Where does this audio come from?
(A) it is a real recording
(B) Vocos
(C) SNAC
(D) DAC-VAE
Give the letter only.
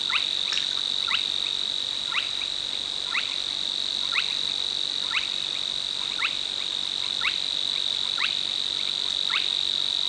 A